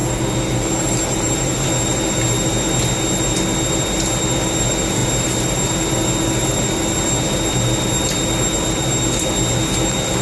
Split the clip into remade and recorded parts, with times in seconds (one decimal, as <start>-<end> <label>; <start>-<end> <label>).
0.0-10.2 recorded